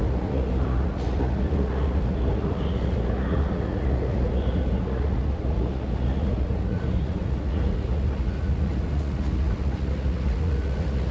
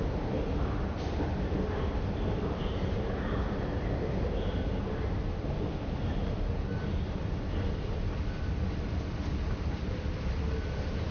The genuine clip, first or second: second